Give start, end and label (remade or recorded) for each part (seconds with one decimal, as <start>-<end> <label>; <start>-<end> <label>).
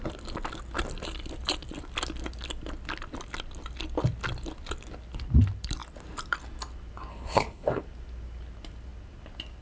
0.0-7.1 recorded; 7.1-7.8 remade; 7.8-9.6 recorded